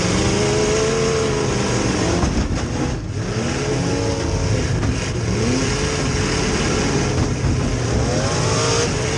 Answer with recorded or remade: recorded